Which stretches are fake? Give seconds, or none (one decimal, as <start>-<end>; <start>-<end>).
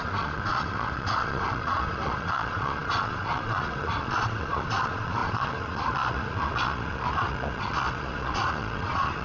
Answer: 0.0-9.2